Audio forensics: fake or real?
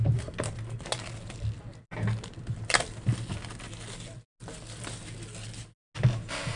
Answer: real